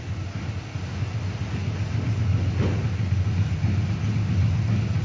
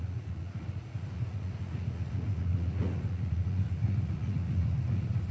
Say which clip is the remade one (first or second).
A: second